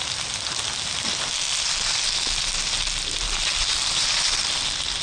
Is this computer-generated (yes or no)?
no